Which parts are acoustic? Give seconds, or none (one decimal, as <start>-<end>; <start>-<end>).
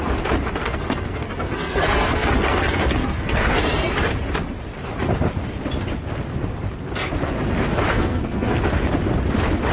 0.0-0.6; 3.6-7.9; 8.6-9.7